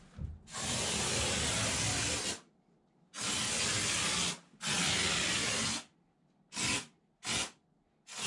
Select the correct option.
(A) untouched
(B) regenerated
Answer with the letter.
A